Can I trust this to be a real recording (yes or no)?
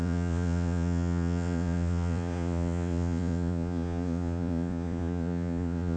no